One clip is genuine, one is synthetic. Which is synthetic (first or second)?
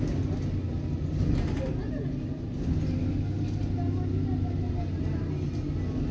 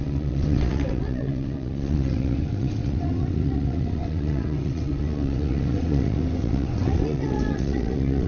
second